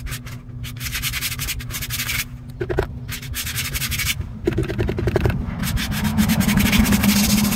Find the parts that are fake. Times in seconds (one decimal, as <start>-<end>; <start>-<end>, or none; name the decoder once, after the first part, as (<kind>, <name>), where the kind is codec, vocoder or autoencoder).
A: 4.6-5.5 (vocoder, BigVGAN v2); 6.1-6.8